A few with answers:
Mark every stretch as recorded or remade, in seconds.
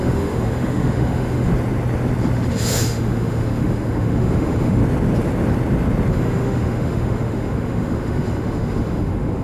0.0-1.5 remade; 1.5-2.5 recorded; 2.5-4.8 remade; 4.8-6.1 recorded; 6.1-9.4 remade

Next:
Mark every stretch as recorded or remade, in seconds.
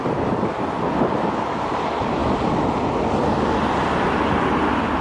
0.0-5.0 recorded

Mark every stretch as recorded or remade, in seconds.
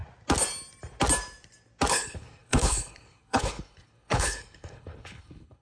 0.0-1.9 recorded; 1.9-5.6 remade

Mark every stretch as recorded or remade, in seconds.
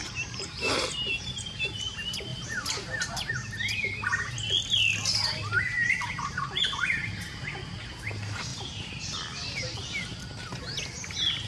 0.0-2.3 recorded; 2.3-3.3 remade; 3.3-8.5 recorded; 8.5-10.6 remade; 10.6-11.5 recorded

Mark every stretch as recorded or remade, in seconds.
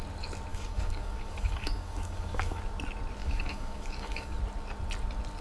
0.0-0.5 recorded; 0.5-2.6 remade; 2.6-3.2 recorded; 3.2-4.4 remade; 4.4-5.4 recorded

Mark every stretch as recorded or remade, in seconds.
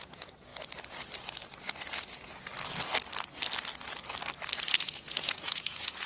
0.0-0.5 remade; 0.5-2.0 recorded; 2.0-2.5 remade; 2.5-4.7 recorded; 4.7-6.1 remade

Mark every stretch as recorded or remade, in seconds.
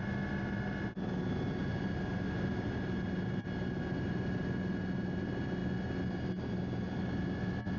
0.0-7.8 recorded